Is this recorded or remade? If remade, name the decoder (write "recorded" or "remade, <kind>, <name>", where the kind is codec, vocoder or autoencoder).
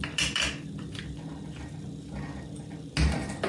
recorded